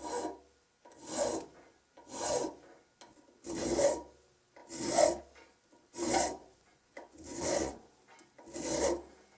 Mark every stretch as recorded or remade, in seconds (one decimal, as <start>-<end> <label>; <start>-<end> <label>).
0.0-6.4 recorded; 6.4-7.9 remade; 7.9-9.4 recorded